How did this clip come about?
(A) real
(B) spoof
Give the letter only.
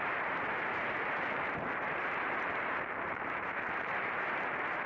B